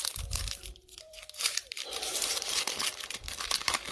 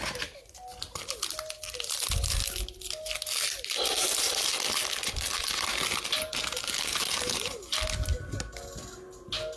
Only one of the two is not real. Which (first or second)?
first